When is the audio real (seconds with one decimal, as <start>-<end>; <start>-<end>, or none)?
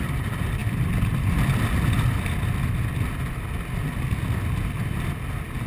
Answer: 0.0-5.7